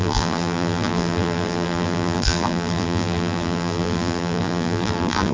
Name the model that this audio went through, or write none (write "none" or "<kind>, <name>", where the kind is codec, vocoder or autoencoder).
vocoder, BigVGAN v2